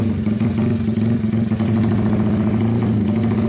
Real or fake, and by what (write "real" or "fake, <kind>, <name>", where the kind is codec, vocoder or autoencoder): real